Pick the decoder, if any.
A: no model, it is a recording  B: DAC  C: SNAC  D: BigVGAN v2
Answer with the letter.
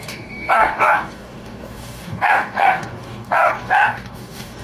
B